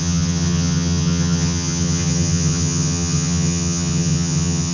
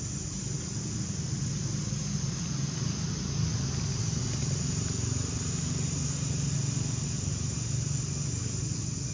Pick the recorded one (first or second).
second